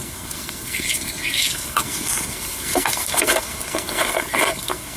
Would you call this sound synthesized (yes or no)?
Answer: yes